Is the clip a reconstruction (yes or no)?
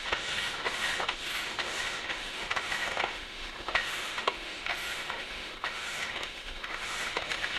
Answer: yes